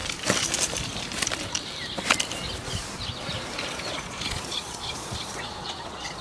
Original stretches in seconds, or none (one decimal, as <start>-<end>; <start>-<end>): 0.0-3.7